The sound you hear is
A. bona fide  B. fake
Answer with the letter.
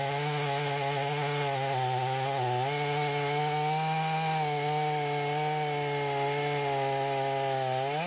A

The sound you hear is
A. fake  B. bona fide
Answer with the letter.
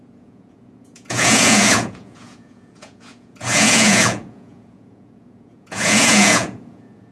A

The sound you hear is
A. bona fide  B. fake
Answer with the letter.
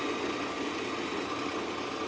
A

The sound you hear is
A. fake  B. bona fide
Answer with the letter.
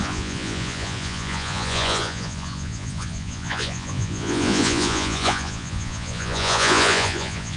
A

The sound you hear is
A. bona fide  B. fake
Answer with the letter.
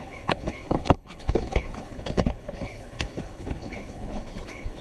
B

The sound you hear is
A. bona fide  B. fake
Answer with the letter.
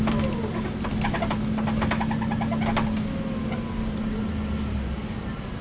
A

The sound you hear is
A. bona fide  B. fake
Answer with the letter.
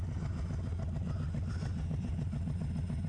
A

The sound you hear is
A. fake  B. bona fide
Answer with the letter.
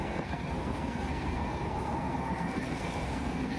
A